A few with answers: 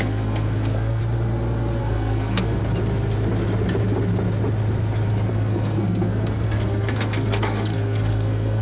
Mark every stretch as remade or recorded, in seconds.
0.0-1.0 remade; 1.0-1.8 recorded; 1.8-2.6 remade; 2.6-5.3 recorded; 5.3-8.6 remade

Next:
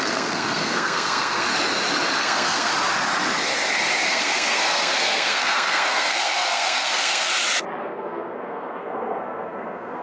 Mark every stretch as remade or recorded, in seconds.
0.0-1.5 remade; 1.5-2.2 recorded; 2.2-2.7 remade; 2.7-4.1 recorded; 4.1-7.3 remade; 7.3-7.8 recorded; 7.8-10.0 remade

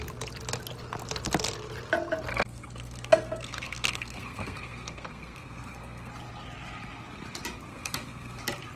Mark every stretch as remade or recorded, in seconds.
0.0-2.3 recorded; 2.3-6.1 remade; 6.1-7.7 recorded; 7.7-8.4 remade; 8.4-8.8 recorded

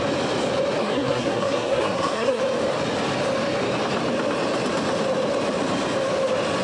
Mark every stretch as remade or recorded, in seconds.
0.0-0.8 recorded; 0.8-2.4 remade; 2.4-6.6 recorded